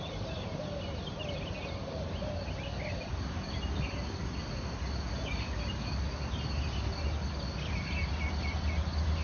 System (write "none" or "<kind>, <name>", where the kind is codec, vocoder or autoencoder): none